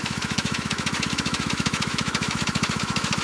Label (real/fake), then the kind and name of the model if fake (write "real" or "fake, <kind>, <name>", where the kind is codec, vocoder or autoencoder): fake, autoencoder, DAC-VAE